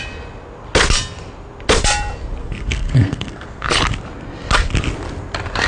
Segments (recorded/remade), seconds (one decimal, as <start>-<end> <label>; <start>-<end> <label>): 0.0-2.4 recorded; 2.4-3.7 remade; 3.7-5.7 recorded